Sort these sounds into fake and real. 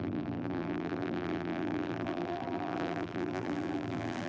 fake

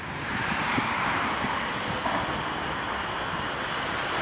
real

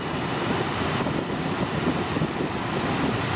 real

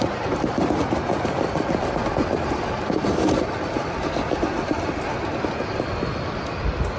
real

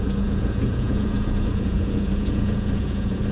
fake